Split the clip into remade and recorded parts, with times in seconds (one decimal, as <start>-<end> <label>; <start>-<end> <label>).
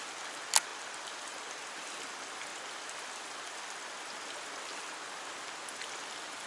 0.0-6.5 recorded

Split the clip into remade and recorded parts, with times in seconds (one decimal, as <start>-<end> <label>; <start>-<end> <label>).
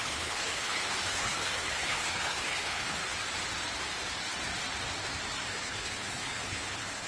0.0-3.0 remade; 3.0-5.5 recorded; 5.5-7.1 remade